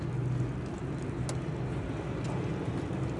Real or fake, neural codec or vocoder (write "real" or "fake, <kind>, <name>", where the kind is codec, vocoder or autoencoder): real